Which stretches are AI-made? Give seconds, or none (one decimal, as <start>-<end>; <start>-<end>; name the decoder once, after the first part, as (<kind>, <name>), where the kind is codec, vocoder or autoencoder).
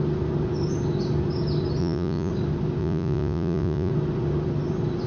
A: 1.8-2.3 (vocoder, Vocos); 2.8-3.9